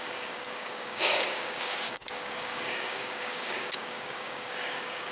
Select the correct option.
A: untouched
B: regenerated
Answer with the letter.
B